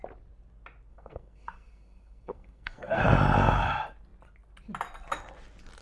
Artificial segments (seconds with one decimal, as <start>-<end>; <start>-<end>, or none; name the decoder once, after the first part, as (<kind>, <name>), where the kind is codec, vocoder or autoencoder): 0.9-3.0 (codec, SNAC)